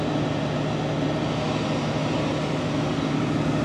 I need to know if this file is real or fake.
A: real